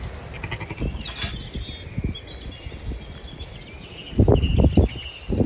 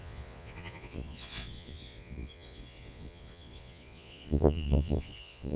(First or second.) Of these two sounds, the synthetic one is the second